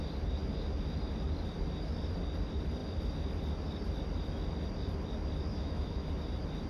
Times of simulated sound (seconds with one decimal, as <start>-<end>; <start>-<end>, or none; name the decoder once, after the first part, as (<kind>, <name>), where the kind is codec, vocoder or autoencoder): 5.5-6.1 (autoencoder, DAC-VAE)